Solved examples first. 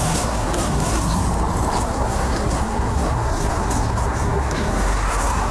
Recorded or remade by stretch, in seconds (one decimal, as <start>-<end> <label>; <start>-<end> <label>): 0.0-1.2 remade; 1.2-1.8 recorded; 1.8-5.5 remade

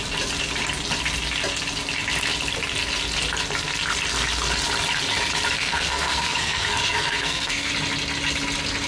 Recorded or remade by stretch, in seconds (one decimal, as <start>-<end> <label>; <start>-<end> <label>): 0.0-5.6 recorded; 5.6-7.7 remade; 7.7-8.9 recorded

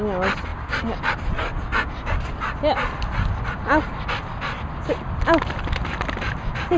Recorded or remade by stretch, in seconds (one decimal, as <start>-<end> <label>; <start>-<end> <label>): 0.0-6.8 recorded

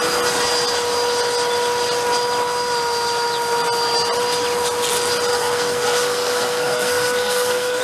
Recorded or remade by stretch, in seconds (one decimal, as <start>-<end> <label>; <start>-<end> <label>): 0.0-5.3 recorded; 5.3-7.8 remade

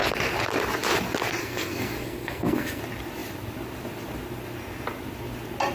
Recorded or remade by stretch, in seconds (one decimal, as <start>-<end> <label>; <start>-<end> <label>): 0.0-1.4 recorded; 1.4-2.8 remade; 2.8-5.7 recorded

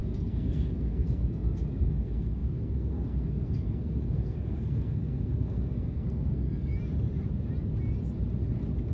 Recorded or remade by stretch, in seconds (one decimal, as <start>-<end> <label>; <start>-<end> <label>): 0.0-6.7 remade; 6.7-8.9 recorded

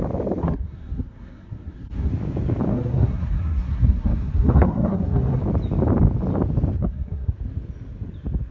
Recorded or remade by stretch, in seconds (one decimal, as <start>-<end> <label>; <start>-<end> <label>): 0.0-0.4 recorded; 0.4-2.1 remade; 2.1-2.7 recorded; 2.7-5.4 remade; 5.4-6.8 recorded; 6.8-7.3 remade; 7.3-8.5 recorded

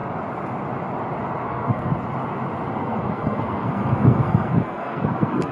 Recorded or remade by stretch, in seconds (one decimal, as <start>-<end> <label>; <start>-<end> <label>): 0.0-1.4 recorded; 1.4-1.9 remade; 1.9-2.8 recorded; 2.8-5.5 remade